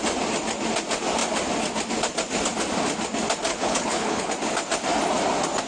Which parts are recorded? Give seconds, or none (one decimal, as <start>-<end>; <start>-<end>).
0.0-3.5; 4.3-5.7